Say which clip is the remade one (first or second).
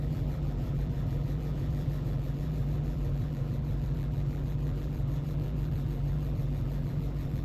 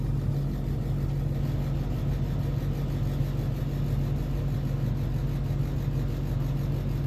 first